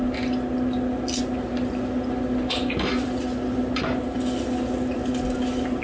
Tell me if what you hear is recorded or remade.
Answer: recorded